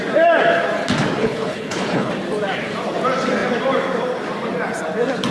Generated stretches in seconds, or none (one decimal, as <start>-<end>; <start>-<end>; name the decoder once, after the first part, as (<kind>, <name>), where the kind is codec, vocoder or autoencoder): 1.2-2.1 (codec, HILCodec)

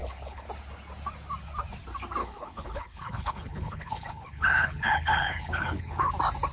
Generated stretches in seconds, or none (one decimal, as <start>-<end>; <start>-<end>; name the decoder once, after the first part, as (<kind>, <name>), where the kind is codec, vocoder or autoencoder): 0.0-0.5 (codec, HILCodec); 2.2-6.1

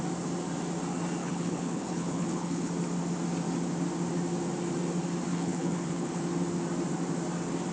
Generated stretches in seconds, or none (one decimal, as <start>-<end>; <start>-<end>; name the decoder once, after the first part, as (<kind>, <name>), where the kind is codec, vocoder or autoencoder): 1.2-2.7 (codec, HILCodec); 5.3-6.2

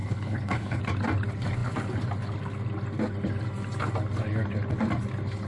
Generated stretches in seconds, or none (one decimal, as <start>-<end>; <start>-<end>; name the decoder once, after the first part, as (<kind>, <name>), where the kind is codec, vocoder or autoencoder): 0.0-0.8 (codec, HILCodec)